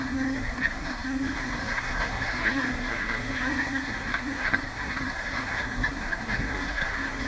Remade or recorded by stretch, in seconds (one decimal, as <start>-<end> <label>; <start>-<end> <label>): 0.0-7.3 remade